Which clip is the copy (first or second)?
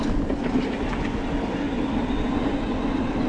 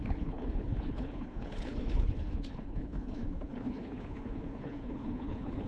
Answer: second